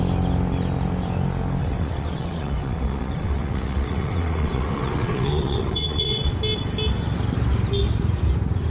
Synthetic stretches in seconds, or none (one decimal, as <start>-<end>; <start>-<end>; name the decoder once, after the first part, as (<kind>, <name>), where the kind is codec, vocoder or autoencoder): 1.6-6.3 (vocoder, WaveNeXt)